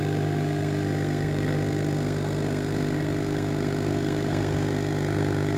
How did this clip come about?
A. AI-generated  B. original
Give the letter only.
A